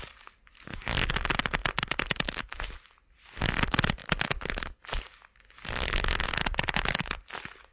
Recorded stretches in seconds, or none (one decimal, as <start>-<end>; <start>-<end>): 0.0-7.7

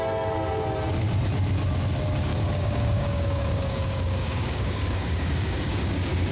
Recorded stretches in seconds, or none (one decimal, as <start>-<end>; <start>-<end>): 0.0-2.3

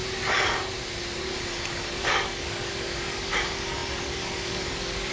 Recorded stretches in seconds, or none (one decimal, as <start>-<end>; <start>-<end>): 0.0-1.2

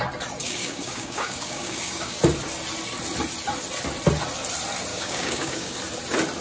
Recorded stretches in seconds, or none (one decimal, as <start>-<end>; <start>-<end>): 0.0-0.4; 2.2-4.9; 5.8-6.4

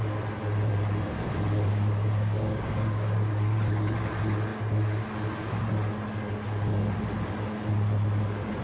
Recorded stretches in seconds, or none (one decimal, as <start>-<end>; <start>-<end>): 0.0-1.7; 3.3-8.6

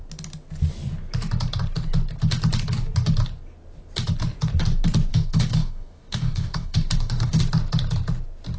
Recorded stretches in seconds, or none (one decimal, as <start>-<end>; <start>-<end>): 0.0-5.1; 7.4-8.6

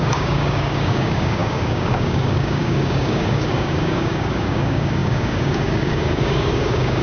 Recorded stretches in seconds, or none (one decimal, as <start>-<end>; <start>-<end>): none

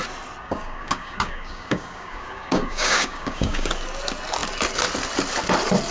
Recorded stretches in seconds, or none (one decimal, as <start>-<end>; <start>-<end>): 0.0-0.4; 3.7-5.9